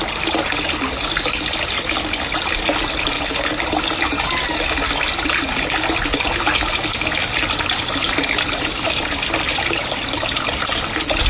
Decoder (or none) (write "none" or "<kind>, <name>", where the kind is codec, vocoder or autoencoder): none